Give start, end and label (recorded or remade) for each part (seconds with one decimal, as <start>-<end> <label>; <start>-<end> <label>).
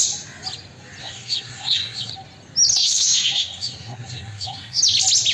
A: 0.0-1.0 recorded; 1.0-2.1 remade; 2.1-2.7 recorded; 2.7-4.8 remade; 4.8-5.3 recorded